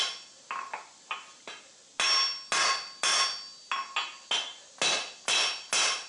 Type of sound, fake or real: real